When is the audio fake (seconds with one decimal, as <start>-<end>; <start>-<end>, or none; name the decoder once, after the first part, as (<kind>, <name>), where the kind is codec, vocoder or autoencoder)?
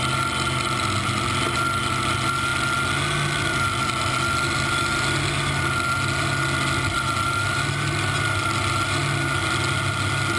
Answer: none